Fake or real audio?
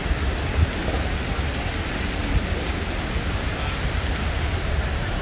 real